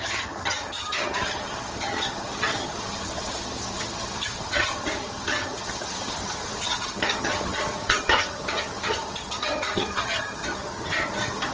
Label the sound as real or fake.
fake